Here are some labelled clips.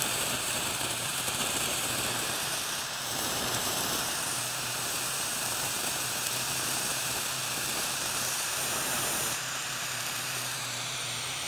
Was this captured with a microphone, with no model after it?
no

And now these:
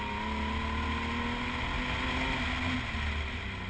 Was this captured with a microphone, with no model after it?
yes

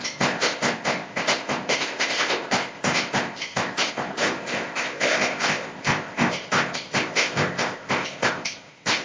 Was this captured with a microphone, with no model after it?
no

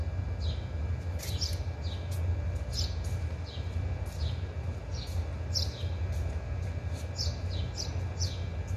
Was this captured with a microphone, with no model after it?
yes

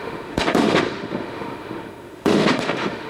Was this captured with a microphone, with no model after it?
no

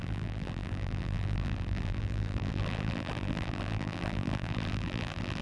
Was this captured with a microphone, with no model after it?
no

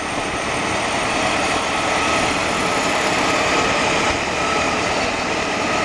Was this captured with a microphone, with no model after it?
yes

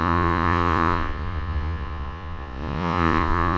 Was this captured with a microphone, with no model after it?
no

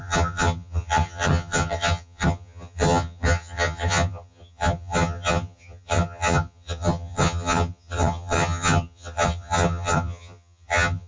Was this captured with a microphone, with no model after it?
no